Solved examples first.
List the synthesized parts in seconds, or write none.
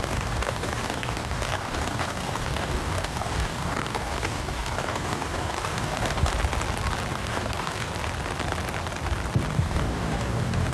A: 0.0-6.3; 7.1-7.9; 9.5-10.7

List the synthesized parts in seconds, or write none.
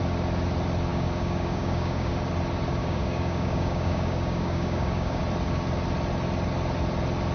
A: 0.9-2.1; 2.8-5.2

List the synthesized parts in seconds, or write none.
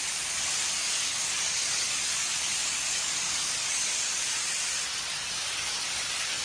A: 0.8-4.2; 5.1-6.4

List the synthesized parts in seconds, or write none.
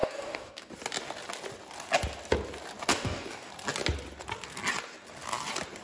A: 0.0-0.7; 2.9-3.5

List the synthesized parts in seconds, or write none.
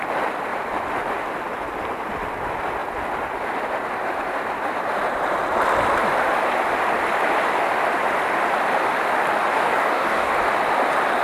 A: 9.5-10.3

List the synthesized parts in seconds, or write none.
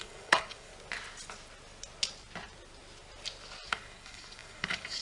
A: 0.0-0.7; 3.7-5.0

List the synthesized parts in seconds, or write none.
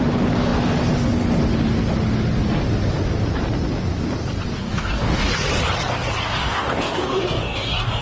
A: 4.6-5.3; 6.2-8.0